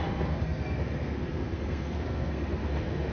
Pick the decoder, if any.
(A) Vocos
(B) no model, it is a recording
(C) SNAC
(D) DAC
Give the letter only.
C